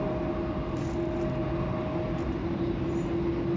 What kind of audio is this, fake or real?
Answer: real